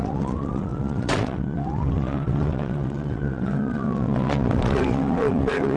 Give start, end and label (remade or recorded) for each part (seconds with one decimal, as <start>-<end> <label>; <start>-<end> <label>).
0.0-5.8 remade